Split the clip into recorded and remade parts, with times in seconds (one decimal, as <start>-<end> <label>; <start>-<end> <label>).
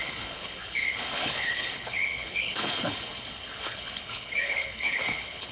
0.0-5.5 remade